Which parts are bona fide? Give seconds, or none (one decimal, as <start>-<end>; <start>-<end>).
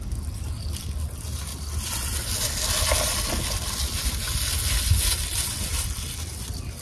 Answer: 0.0-6.8